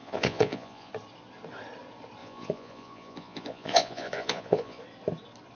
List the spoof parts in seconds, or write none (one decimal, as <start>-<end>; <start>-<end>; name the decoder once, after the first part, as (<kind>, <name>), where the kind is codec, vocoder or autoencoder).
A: 0.0-0.9 (vocoder, Vocos); 2.2-4.8